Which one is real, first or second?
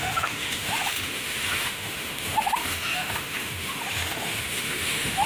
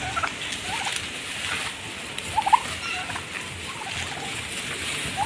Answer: second